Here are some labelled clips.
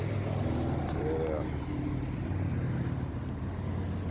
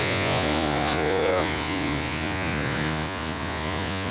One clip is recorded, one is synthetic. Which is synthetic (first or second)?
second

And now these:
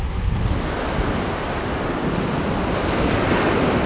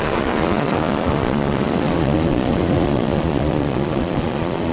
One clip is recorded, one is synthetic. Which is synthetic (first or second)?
second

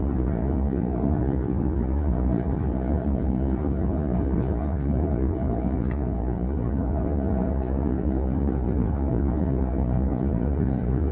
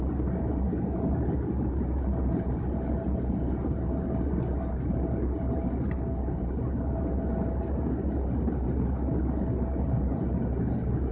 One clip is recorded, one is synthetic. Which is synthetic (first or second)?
first